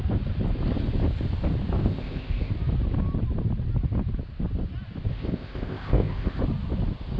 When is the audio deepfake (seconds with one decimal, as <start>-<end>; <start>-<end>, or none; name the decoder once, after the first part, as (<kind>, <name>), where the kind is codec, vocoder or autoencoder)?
1.8-2.5 (codec, ZipCodec); 5.1-6.4